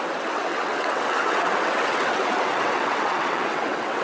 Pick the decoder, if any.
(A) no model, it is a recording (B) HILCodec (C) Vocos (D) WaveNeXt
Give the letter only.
D